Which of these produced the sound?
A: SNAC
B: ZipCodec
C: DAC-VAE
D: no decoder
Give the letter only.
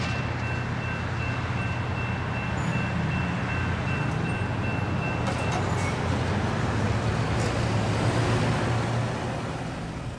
D